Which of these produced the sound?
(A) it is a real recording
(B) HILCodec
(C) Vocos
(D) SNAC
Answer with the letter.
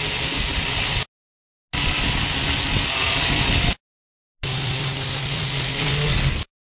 A